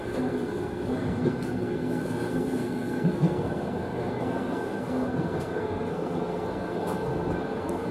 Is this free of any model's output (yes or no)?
no